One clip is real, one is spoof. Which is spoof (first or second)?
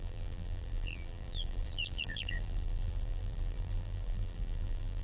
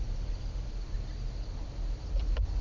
first